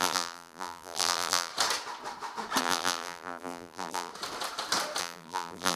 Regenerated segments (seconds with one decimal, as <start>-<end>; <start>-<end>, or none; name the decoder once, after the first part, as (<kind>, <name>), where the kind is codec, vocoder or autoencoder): 0.0-1.5 (vocoder, BigVGAN v2); 2.6-4.1; 5.0-5.8